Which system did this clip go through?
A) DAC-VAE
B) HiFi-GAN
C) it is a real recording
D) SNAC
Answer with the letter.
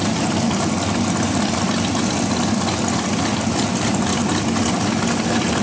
C